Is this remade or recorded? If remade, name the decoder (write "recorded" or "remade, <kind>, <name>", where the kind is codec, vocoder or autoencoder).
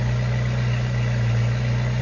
recorded